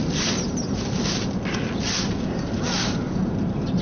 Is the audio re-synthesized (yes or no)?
no